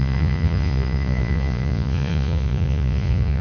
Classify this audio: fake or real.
fake